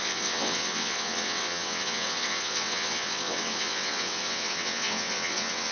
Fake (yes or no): yes